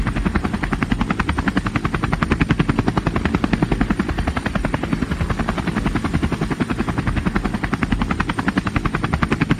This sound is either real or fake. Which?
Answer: real